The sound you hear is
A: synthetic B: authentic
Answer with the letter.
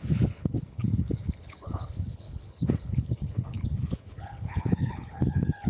A